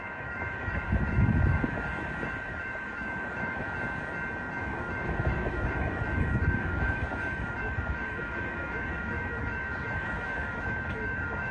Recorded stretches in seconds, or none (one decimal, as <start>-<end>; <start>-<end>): 3.6-4.6